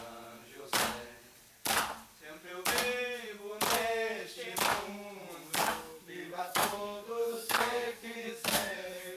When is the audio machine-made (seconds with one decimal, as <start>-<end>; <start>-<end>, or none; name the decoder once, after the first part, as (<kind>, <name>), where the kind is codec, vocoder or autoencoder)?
5.6-9.2 (codec, SNAC)